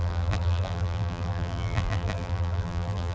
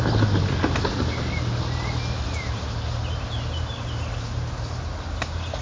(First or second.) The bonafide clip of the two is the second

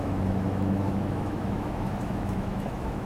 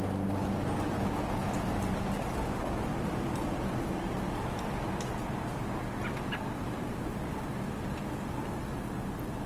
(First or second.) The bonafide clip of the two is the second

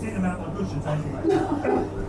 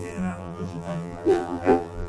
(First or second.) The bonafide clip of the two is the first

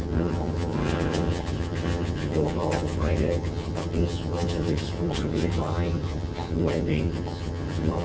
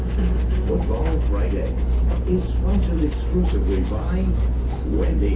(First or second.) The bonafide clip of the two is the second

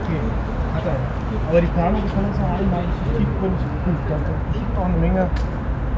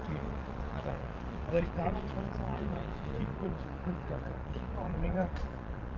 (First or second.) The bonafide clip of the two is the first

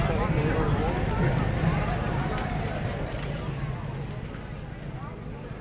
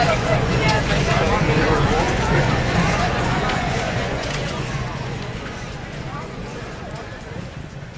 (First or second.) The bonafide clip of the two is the first